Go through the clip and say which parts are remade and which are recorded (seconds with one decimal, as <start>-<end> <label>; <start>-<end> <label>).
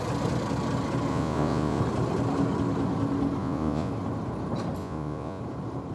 0.0-1.1 recorded; 1.1-1.8 remade; 1.8-3.4 recorded; 3.4-3.9 remade; 3.9-4.8 recorded; 4.8-5.4 remade; 5.4-5.9 recorded